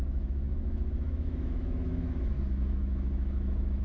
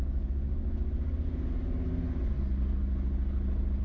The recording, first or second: second